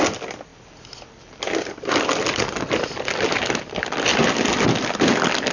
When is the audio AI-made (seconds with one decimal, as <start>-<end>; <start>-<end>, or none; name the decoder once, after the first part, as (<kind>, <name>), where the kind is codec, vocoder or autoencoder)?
4.1-4.9 (vocoder, BigVGAN v2)